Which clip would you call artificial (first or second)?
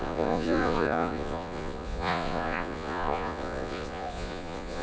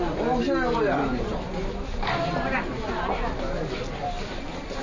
first